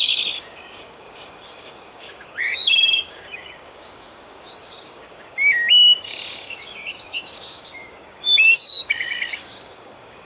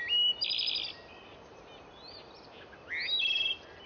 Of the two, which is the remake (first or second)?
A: first